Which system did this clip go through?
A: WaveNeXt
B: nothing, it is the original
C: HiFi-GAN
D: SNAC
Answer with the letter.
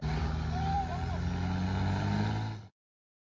B